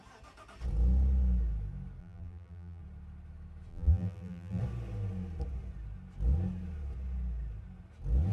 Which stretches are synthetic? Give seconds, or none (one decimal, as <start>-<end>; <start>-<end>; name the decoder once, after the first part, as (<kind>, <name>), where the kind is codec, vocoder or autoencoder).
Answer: 2.0-2.8 (vocoder, BigVGAN v2); 3.7-4.6